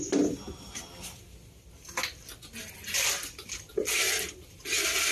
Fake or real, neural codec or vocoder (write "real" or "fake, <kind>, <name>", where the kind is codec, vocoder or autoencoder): real